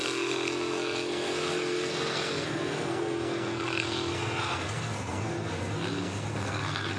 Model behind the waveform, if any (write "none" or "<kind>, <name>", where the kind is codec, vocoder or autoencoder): codec, SNAC